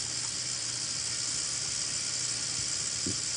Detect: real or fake real